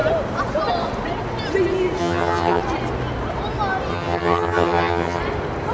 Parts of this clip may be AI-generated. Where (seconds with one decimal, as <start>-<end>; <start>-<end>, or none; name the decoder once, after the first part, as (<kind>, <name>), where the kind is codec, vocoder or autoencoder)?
2.0-2.6 (vocoder, HiFi-GAN); 3.9-5.2